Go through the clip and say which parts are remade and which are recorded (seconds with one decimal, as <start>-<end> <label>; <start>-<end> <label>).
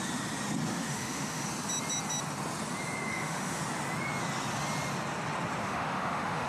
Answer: 0.0-0.7 recorded; 0.7-1.5 remade; 1.5-3.1 recorded; 3.1-3.6 remade; 3.6-5.6 recorded; 5.6-6.5 remade